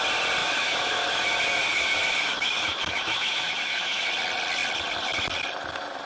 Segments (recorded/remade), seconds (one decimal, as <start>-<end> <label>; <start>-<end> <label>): 0.0-0.4 recorded; 0.4-4.1 remade; 4.1-6.1 recorded